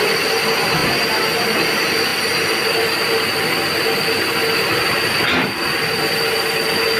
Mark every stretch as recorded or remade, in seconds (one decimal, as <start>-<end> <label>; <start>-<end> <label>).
0.0-7.0 recorded